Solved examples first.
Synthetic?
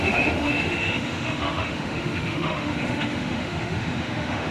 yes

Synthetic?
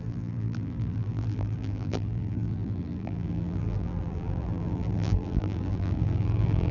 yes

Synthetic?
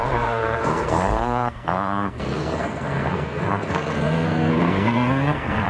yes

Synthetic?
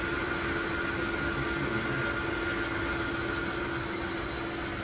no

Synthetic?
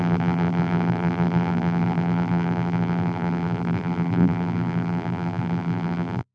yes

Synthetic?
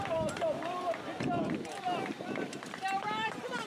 yes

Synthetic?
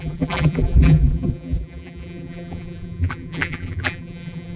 yes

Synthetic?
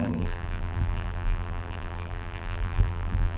yes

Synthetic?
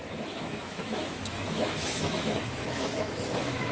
yes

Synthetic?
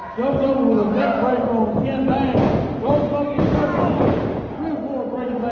no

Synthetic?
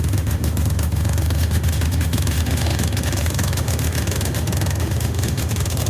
yes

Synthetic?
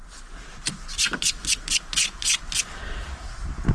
no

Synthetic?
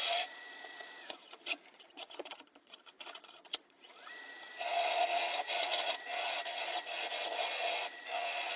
yes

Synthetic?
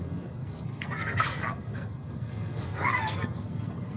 yes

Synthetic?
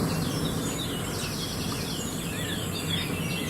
no